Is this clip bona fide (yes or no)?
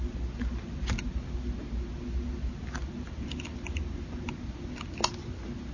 yes